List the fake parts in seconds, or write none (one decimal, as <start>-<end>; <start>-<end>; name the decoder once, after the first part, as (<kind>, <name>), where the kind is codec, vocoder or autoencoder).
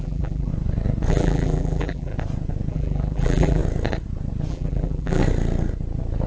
0.0-0.5 (vocoder, BigVGAN v2); 1.1-2.1; 2.7-3.6; 4.5-5.2